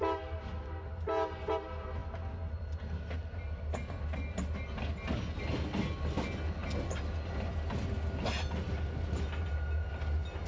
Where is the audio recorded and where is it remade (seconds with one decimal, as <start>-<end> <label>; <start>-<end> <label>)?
0.0-10.5 recorded